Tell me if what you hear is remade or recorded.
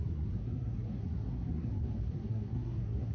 remade